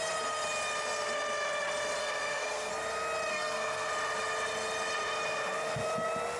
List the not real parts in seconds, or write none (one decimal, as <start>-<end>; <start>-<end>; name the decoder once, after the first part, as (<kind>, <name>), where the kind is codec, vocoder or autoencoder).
2.0-2.7 (codec, SNAC); 3.3-3.9